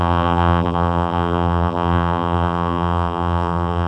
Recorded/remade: remade